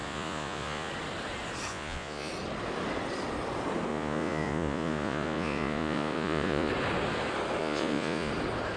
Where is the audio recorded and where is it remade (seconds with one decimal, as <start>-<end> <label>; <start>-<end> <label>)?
0.0-0.9 remade; 0.9-1.7 recorded; 1.7-2.3 remade; 2.3-3.9 recorded; 3.9-6.7 remade; 6.7-7.6 recorded; 7.6-8.3 remade; 8.3-8.8 recorded